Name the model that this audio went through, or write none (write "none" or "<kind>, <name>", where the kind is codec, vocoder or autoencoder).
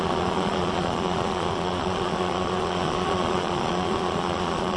vocoder, Vocos